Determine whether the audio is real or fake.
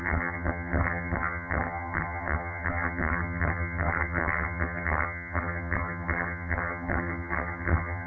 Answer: fake